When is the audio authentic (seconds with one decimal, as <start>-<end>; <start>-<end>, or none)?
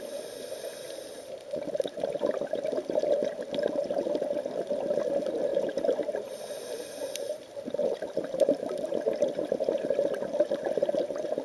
0.0-5.5; 9.5-11.4